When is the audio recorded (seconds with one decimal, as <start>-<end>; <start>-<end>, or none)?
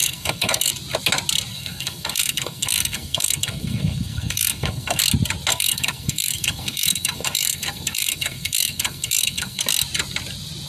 0.7-1.5; 5.0-5.5; 9.6-10.7